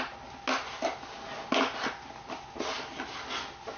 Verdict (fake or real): real